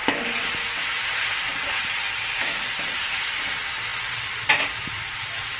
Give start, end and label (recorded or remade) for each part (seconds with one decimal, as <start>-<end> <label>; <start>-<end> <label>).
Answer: 0.0-2.9 recorded; 2.9-5.6 remade